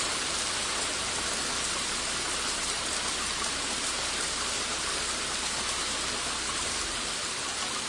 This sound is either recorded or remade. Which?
recorded